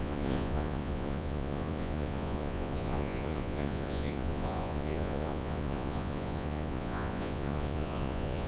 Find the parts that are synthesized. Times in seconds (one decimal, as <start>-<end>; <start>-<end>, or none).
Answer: 0.0-8.5